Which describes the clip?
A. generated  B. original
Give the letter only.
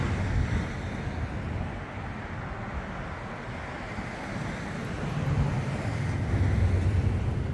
B